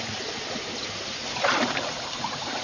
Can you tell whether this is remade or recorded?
remade